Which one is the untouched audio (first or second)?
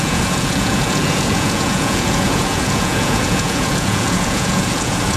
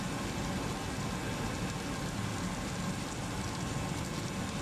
second